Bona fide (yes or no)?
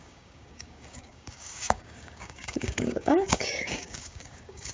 no